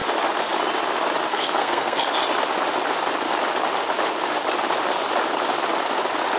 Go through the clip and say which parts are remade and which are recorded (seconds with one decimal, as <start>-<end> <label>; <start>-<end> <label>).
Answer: 0.0-1.3 recorded; 1.3-2.1 remade; 2.1-6.4 recorded